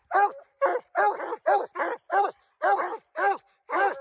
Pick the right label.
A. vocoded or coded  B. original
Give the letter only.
B